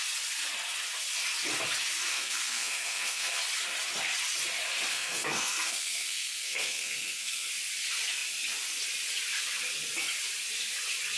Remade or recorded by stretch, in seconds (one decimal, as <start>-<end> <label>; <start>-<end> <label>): 0.0-2.1 recorded; 2.1-3.4 remade; 3.4-4.9 recorded; 4.9-7.5 remade; 7.5-11.2 recorded